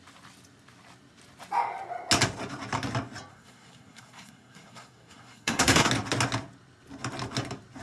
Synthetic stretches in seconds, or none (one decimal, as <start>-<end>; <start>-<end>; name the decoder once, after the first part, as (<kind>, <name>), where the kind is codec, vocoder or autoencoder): 3.3-5.9 (codec, SNAC)